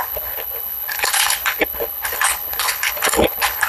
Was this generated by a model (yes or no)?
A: yes